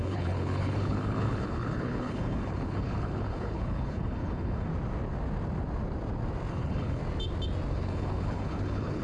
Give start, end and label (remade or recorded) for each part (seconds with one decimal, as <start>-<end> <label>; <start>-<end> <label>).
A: 0.0-4.7 remade; 4.7-6.5 recorded; 6.5-7.0 remade; 7.0-7.7 recorded; 7.7-9.0 remade

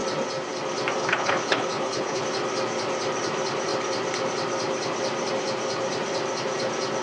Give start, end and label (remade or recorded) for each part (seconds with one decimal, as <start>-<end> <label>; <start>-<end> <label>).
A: 0.0-1.0 recorded; 1.0-2.2 remade; 2.2-7.0 recorded

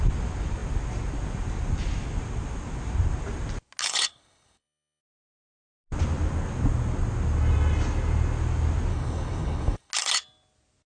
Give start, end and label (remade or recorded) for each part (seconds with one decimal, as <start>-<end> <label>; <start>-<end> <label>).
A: 0.0-3.8 recorded; 3.8-5.0 remade; 5.0-8.9 recorded; 8.9-9.9 remade; 9.9-11.0 recorded

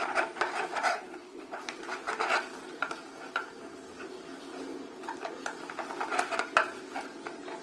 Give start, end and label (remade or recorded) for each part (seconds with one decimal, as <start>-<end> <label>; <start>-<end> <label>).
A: 0.0-0.9 recorded; 0.9-1.6 remade; 1.6-7.6 recorded

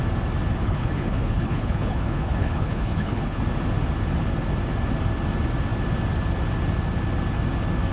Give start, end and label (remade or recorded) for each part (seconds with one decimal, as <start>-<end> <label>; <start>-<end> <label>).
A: 0.0-0.6 recorded; 0.6-3.4 remade; 3.4-7.9 recorded

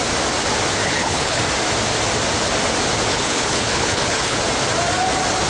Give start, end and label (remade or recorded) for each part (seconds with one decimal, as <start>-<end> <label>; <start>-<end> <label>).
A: 0.0-0.8 recorded; 0.8-1.4 remade; 1.4-3.1 recorded; 3.1-4.4 remade; 4.4-5.5 recorded